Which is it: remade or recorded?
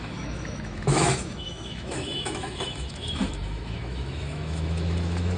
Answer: remade